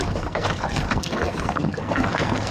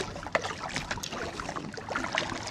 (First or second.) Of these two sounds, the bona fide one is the second